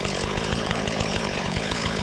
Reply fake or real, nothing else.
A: fake